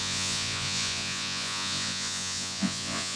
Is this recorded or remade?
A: remade